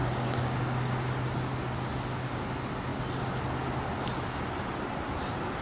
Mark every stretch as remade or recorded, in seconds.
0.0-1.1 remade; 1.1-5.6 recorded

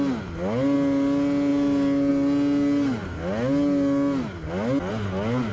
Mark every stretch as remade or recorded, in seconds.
0.0-5.5 recorded

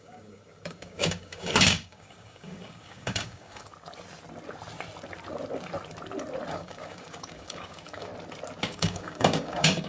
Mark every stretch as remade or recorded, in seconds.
0.0-3.7 remade; 3.7-6.5 recorded; 6.5-8.1 remade; 8.1-8.6 recorded; 8.6-9.9 remade

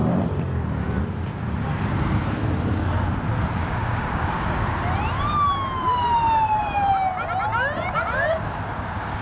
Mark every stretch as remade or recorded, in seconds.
0.0-3.6 recorded; 3.6-4.3 remade; 4.3-9.2 recorded

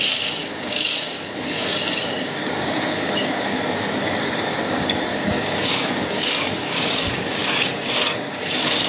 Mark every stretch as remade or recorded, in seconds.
0.0-8.9 remade

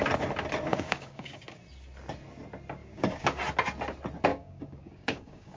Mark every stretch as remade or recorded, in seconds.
0.0-0.7 recorded; 0.7-1.4 remade; 1.4-2.8 recorded; 2.8-3.4 remade; 3.4-4.3 recorded; 4.3-5.6 remade